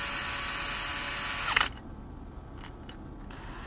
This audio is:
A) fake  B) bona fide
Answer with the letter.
B